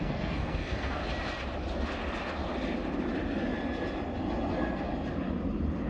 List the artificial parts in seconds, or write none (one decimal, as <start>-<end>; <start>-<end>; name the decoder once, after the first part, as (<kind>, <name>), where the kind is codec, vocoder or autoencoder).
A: 0.0-1.0 (codec, SNAC); 4.5-4.9